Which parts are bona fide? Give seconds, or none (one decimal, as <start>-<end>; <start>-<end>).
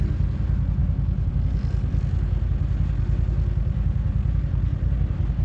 0.0-5.4